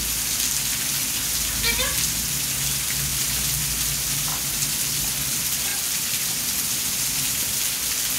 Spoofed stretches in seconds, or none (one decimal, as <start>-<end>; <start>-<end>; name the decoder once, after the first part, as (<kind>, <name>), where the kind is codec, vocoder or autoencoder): none